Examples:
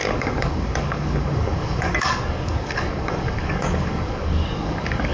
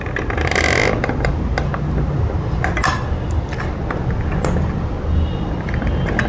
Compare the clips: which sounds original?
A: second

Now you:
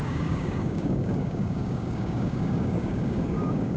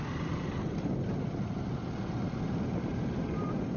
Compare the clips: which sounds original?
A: second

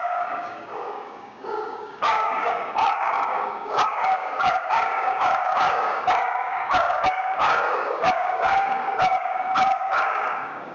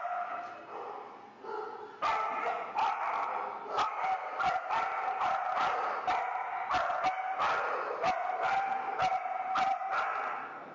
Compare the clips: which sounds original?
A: second